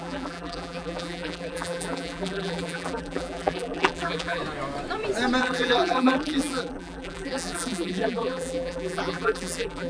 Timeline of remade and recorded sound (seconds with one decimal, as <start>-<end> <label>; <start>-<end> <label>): 0.0-4.4 remade; 4.4-5.4 recorded; 5.4-9.9 remade

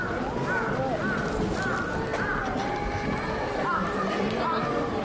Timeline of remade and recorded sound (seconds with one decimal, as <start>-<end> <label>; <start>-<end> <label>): 0.0-5.0 recorded

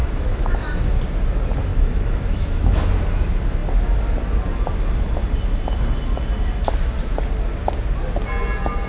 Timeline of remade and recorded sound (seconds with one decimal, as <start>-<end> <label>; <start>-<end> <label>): 0.0-0.9 remade; 0.9-1.7 recorded; 1.7-2.9 remade; 2.9-8.9 recorded

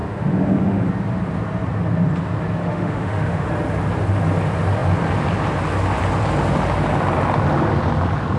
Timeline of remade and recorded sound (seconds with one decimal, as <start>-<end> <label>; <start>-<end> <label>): 0.0-0.9 remade; 0.9-2.6 recorded; 2.6-3.5 remade; 3.5-8.4 recorded